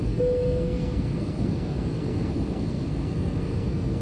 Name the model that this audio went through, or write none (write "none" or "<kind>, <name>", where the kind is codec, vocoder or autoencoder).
codec, SNAC